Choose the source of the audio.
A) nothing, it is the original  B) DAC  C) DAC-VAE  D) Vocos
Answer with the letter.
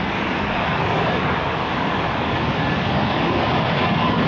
B